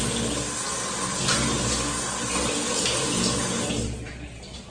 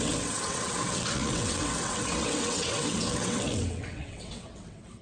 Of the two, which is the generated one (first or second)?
second